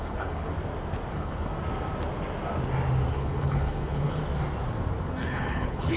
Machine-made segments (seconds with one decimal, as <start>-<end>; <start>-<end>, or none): 0.0-0.5; 1.1-1.5; 3.1-4.2; 5.2-6.0